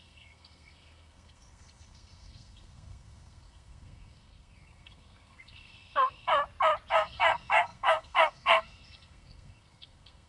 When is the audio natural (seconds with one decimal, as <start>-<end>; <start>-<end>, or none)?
6.3-6.9